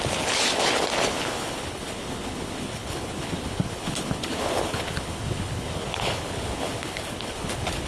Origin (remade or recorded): remade